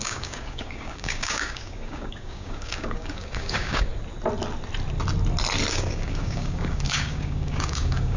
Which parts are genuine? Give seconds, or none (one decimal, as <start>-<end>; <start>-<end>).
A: 3.9-5.7